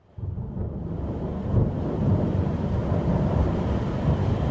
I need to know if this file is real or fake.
real